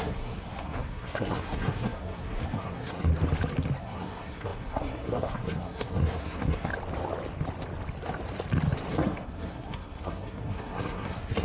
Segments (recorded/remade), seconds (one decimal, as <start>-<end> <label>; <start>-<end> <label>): 0.0-3.1 remade; 3.1-3.8 recorded; 3.8-6.7 remade; 6.7-8.9 recorded; 8.9-11.4 remade